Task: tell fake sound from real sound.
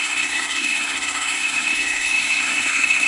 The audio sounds fake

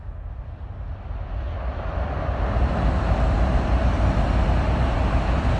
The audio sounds real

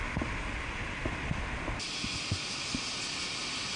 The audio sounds real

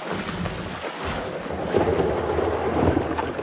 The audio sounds real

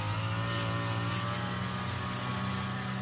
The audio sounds real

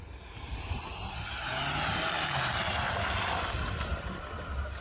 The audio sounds real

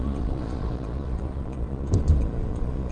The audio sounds fake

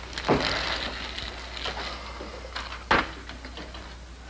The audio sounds real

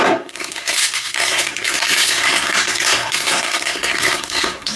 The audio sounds fake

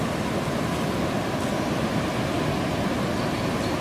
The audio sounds real